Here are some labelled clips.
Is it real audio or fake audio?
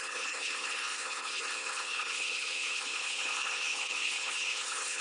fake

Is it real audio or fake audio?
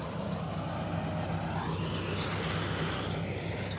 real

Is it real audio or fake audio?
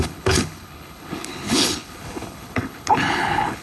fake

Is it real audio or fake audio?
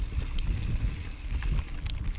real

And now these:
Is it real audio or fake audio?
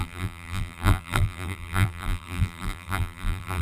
fake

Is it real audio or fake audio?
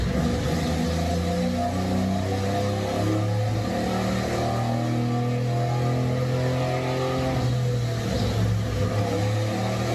real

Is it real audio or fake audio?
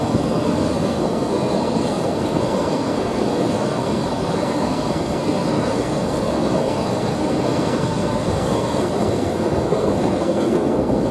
fake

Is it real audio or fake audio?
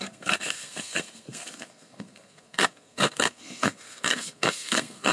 fake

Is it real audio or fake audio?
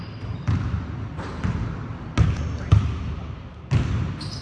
real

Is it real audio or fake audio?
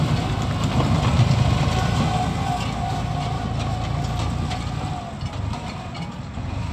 real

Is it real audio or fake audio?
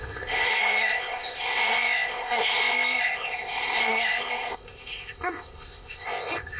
fake